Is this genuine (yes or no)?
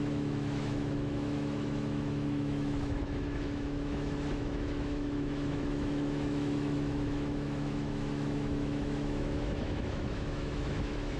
no